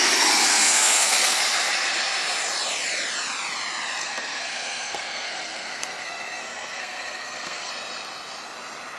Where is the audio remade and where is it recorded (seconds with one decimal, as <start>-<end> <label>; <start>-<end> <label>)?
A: 0.0-0.5 recorded; 0.5-1.4 remade; 1.4-4.0 recorded; 4.0-7.7 remade; 7.7-9.0 recorded